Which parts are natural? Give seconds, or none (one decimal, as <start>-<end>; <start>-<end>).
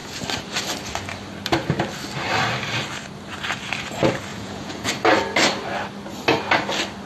0.0-4.3; 4.9-7.1